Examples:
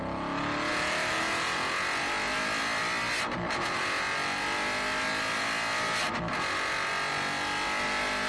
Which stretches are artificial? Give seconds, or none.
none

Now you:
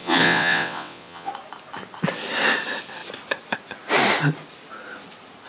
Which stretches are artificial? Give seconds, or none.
0.0-1.3 (vocoder, WaveNeXt)

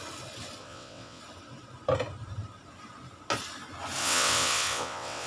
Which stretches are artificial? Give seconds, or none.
0.6-1.2 (vocoder, WaveNeXt); 4.0-5.3

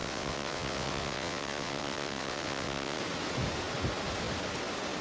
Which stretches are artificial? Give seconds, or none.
0.0-3.0 (vocoder, WaveNeXt)

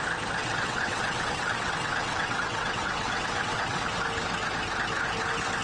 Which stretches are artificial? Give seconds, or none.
0.4-3.8 (vocoder, WaveNeXt)